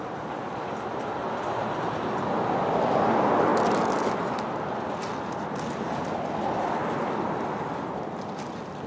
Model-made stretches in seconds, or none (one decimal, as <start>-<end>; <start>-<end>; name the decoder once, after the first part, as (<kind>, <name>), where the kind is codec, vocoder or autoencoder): none